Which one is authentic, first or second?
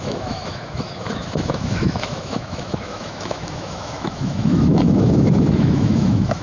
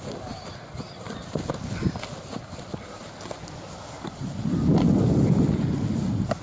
second